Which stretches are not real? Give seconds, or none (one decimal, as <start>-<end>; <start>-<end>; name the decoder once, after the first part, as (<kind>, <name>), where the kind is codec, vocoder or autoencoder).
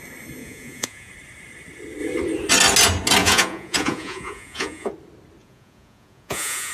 0.4-1.1 (vocoder, Vocos); 3.2-4.9; 5.4-6.7